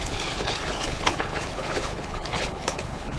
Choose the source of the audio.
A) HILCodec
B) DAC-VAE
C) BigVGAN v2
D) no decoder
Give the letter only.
A